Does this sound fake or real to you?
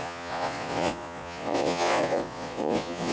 fake